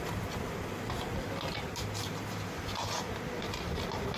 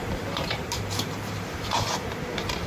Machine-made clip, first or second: second